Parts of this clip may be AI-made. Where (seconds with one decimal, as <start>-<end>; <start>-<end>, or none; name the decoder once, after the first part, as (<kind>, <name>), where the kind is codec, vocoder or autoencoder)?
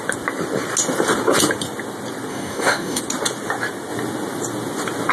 2.3-3.0 (codec, DAC)